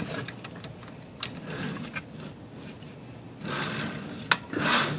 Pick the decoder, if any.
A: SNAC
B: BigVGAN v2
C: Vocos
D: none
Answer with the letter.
D